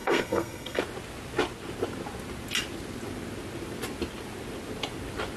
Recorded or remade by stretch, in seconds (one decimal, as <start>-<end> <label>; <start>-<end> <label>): 0.0-0.8 remade; 0.8-5.4 recorded